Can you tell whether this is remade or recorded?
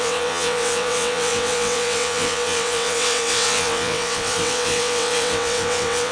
remade